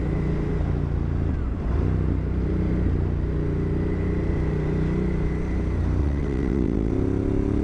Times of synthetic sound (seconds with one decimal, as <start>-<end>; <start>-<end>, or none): 6.0-6.9